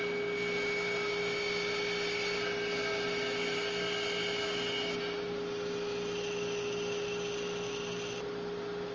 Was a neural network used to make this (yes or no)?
no